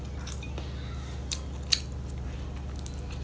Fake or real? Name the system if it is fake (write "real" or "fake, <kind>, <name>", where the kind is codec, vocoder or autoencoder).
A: real